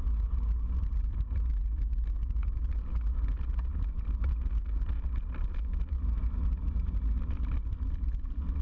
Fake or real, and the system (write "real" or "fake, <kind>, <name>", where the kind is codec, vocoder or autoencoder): real